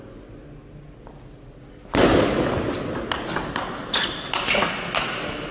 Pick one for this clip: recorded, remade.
recorded